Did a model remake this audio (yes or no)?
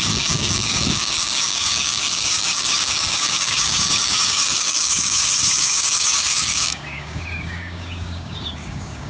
yes